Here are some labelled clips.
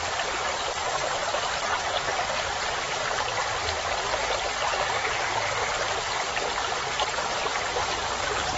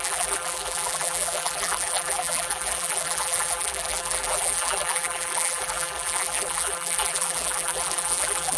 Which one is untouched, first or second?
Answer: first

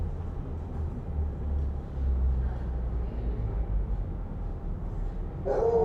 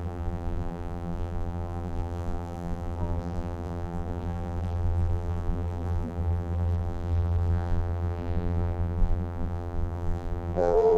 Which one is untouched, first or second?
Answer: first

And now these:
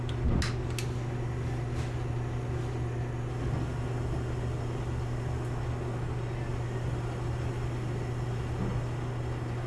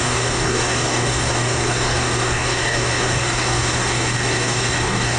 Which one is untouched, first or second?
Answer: first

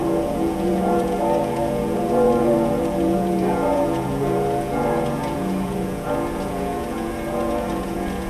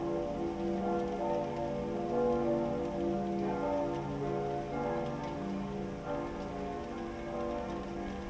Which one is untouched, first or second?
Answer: second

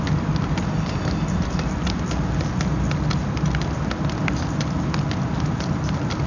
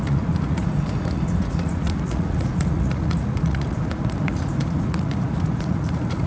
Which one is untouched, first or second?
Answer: first